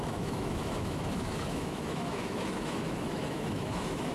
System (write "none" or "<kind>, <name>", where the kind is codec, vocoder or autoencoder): autoencoder, DAC-VAE